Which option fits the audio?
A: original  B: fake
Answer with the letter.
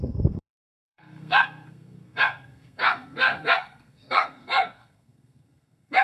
B